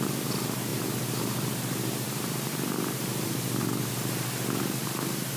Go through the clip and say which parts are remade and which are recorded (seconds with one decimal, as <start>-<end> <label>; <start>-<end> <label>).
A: 0.0-0.7 recorded; 0.7-3.9 remade; 3.9-5.4 recorded